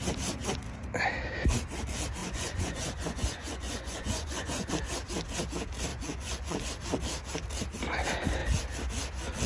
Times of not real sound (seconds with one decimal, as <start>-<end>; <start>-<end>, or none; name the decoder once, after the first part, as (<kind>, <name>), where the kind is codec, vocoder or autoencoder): 2.2-4.7 (vocoder, Vocos); 5.9-6.6